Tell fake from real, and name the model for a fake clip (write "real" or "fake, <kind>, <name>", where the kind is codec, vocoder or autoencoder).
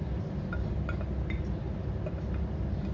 real